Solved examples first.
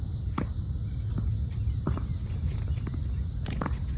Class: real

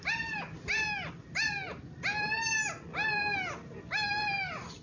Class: real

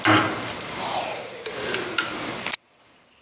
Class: real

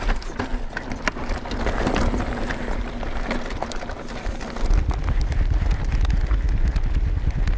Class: real